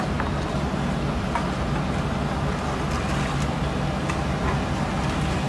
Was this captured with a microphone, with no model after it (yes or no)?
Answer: yes